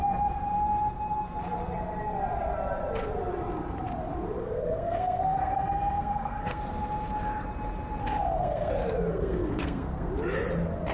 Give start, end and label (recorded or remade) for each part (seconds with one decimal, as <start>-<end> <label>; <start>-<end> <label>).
0.0-4.4 recorded; 4.4-6.6 remade; 6.6-8.0 recorded; 8.0-8.7 remade; 8.7-9.1 recorded; 9.1-10.1 remade; 10.1-10.9 recorded